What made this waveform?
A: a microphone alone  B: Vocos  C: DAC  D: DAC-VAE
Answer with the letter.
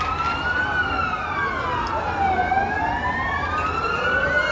A